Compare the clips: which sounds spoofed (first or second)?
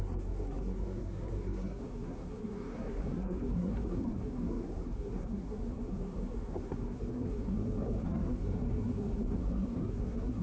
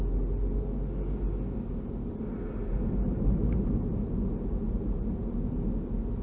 first